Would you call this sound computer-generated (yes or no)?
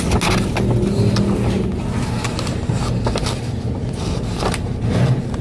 no